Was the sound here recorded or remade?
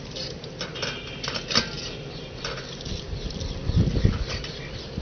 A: recorded